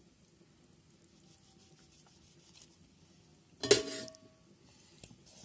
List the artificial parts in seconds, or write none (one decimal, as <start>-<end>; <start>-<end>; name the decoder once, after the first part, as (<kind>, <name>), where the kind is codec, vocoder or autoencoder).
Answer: none